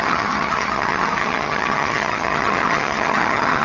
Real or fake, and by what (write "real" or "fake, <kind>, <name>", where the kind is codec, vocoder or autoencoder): fake, vocoder, HiFi-GAN